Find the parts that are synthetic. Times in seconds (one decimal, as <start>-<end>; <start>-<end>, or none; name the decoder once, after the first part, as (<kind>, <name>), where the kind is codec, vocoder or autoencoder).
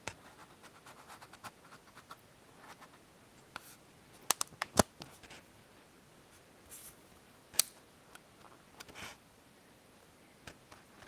6.8-8.0 (vocoder, BigVGAN v2); 9.1-10.3